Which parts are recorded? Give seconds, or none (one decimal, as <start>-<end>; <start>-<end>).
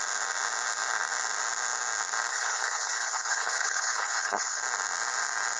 0.0-2.3; 4.6-5.6